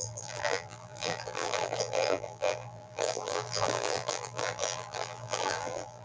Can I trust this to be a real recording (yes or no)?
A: no